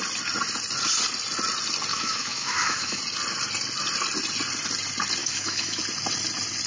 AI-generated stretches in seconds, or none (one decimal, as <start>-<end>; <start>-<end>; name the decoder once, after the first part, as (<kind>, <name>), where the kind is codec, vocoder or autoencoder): 1.9-3.0 (autoencoder, DAC-VAE); 5.2-5.8